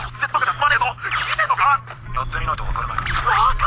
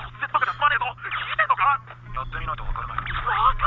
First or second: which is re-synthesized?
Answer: first